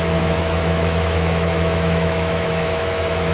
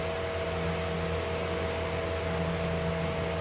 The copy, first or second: first